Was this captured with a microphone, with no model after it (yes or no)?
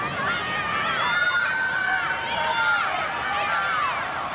yes